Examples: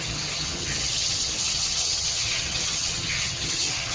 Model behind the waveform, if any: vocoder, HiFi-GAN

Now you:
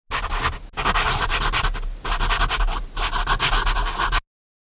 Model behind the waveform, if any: none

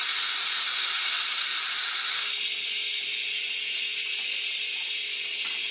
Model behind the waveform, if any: none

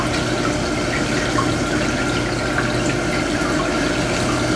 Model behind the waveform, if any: none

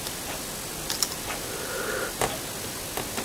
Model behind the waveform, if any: none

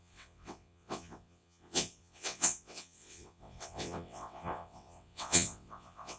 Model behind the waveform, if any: vocoder, WaveNeXt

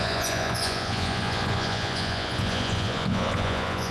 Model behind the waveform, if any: vocoder, Vocos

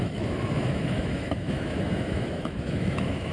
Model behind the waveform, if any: autoencoder, DAC-VAE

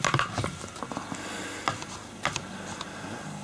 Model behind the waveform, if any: none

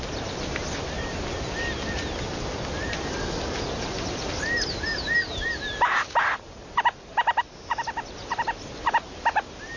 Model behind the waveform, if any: none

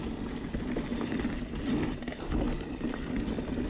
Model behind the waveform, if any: none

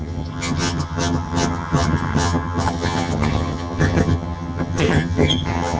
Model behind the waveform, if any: vocoder, HiFi-GAN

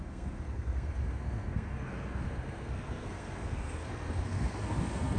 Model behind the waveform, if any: codec, SNAC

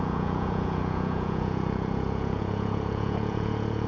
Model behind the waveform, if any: vocoder, Vocos